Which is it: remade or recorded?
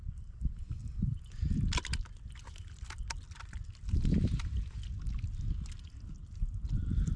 recorded